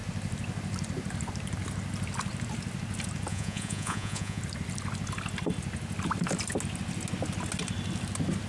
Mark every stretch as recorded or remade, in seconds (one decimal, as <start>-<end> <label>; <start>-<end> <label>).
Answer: 0.0-3.3 recorded; 3.3-4.4 remade; 4.4-8.5 recorded